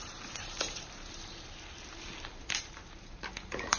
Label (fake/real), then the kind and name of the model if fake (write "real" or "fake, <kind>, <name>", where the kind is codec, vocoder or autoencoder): fake, vocoder, BigVGAN v2